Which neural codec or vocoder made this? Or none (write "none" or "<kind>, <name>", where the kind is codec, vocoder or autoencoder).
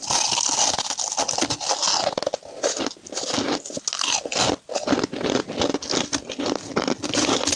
none